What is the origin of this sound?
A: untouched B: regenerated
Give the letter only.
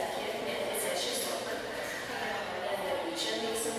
A